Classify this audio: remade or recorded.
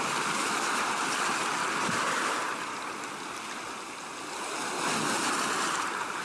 recorded